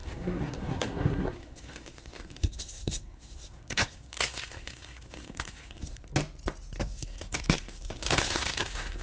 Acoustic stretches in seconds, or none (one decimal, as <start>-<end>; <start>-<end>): 6.0-6.8